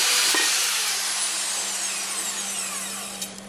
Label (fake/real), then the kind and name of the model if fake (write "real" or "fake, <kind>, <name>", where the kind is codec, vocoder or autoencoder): fake, vocoder, BigVGAN v2